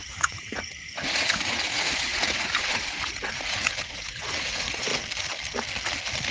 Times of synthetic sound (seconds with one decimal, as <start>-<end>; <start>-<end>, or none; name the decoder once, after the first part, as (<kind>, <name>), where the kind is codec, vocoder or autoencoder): 0.0-4.9 (vocoder, Vocos)